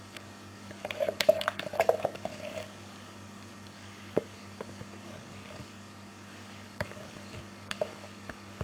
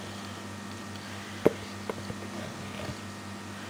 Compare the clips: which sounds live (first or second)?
second